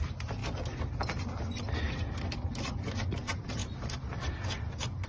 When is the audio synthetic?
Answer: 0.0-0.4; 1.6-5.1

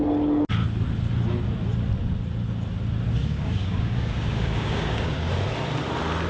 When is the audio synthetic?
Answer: 3.2-5.3

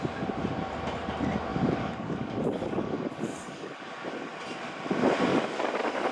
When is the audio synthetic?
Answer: 1.5-3.8; 5.3-6.1

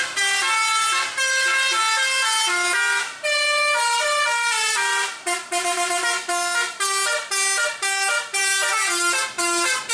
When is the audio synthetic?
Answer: none

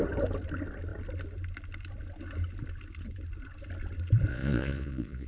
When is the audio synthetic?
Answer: 4.3-5.3

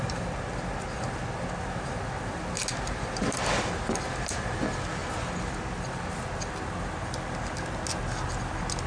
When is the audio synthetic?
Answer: none

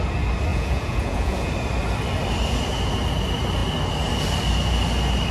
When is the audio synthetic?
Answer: 0.5-1.5